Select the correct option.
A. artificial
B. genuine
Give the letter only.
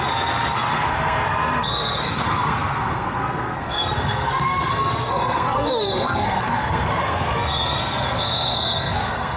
A